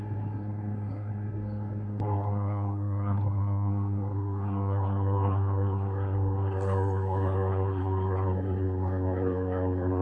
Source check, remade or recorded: remade